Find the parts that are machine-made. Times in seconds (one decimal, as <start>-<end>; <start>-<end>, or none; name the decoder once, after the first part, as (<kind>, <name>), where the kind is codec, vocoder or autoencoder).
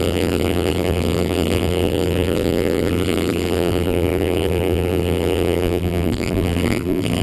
0.0-7.2 (vocoder, BigVGAN v2)